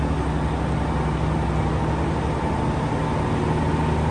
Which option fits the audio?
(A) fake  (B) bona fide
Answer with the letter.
B